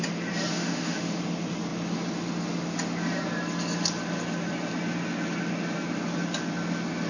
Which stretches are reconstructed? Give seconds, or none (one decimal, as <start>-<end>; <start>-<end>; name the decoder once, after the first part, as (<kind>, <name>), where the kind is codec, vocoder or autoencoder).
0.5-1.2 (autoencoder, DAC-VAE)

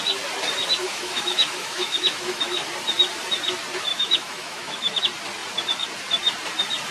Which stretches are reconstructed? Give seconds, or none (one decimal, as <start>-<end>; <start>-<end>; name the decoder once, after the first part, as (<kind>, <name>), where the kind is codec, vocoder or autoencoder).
0.8-2.7 (autoencoder, DAC-VAE); 3.9-5.0

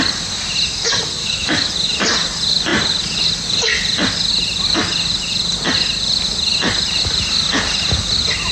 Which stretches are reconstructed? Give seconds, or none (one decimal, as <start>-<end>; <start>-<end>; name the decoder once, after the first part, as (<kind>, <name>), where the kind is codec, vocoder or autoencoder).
1.2-1.7 (autoencoder, DAC-VAE)

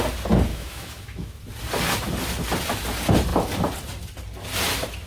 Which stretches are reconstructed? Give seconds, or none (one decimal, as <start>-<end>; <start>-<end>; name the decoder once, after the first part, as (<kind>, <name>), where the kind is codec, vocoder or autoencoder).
0.5-1.4 (autoencoder, DAC-VAE)